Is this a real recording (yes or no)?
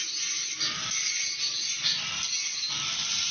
yes